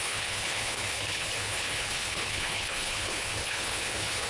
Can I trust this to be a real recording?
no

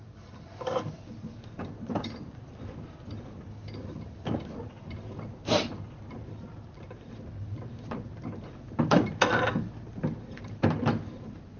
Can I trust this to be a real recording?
yes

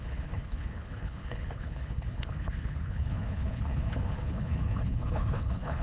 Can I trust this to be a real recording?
no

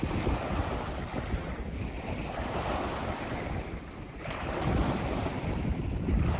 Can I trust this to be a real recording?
yes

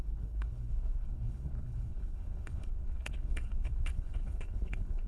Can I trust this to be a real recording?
no